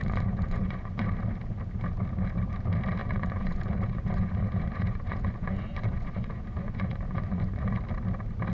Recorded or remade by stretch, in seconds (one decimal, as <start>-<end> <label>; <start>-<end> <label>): 0.0-1.1 remade; 1.1-3.0 recorded; 3.0-7.8 remade; 7.8-8.5 recorded